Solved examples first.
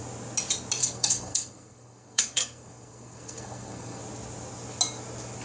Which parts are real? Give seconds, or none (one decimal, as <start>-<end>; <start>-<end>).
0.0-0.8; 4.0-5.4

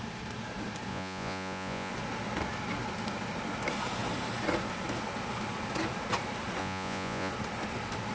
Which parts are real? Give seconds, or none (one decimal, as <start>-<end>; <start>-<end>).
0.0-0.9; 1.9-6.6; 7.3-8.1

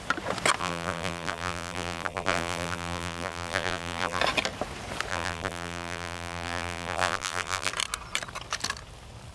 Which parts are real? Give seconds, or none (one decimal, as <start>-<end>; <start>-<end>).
0.0-0.6; 4.2-5.1; 7.7-9.3